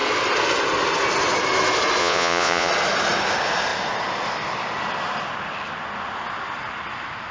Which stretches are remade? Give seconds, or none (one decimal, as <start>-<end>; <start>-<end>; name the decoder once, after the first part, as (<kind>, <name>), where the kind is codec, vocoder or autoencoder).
2.0-2.7 (vocoder, Vocos)